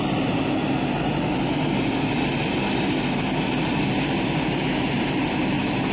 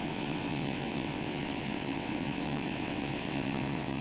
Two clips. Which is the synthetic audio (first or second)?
second